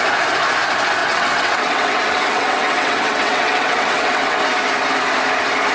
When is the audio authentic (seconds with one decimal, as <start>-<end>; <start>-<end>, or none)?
0.0-1.0; 4.4-5.7